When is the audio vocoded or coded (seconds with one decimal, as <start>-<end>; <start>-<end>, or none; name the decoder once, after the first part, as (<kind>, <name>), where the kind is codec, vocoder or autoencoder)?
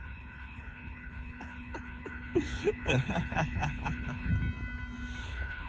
0.0-4.3 (codec, HILCodec); 5.2-5.7